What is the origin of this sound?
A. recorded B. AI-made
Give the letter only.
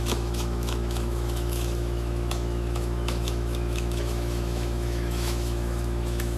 B